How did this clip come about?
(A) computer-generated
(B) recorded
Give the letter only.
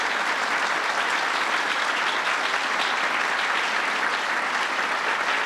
B